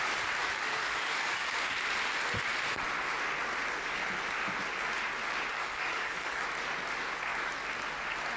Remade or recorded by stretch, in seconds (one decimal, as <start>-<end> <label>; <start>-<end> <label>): 0.0-0.4 recorded; 0.4-1.5 remade; 1.5-5.5 recorded; 5.5-6.4 remade; 6.4-8.4 recorded